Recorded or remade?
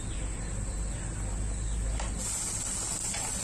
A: recorded